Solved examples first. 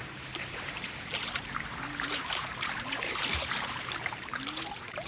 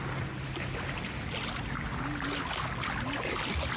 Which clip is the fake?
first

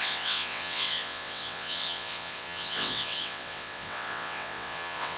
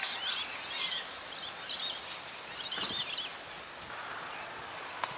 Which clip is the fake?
first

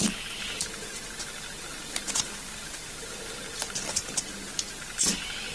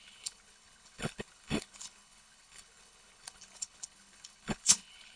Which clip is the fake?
second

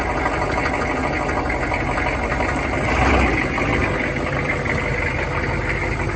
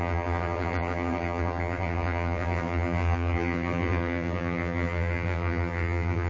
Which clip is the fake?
second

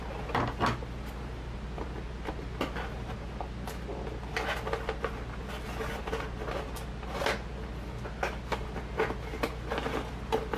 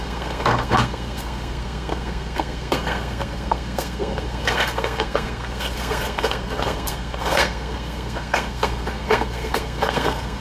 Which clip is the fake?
second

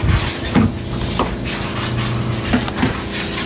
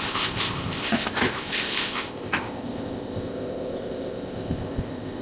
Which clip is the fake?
second